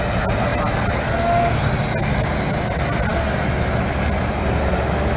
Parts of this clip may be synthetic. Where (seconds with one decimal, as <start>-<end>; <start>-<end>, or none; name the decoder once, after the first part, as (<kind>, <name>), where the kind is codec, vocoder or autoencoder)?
none